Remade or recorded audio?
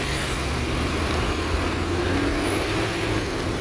recorded